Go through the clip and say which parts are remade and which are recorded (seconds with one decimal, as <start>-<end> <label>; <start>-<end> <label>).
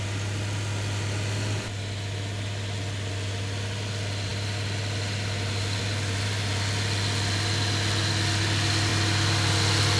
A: 0.0-10.0 recorded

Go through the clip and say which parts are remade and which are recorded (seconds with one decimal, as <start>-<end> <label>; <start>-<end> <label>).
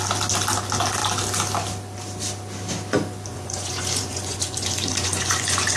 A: 0.0-3.3 recorded; 3.3-5.8 remade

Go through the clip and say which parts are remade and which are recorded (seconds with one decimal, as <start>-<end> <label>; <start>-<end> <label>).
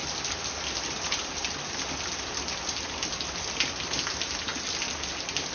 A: 0.0-5.5 recorded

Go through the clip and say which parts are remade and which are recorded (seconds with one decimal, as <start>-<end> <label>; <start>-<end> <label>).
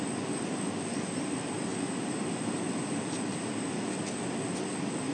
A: 0.0-5.1 recorded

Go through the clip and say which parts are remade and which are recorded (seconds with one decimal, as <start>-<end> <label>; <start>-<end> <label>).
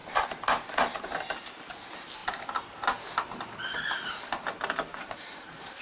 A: 0.0-2.2 recorded; 2.2-5.8 remade